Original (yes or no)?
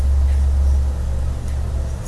yes